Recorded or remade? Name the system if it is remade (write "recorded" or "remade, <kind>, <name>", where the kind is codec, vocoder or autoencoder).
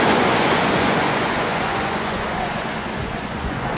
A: remade, vocoder, Vocos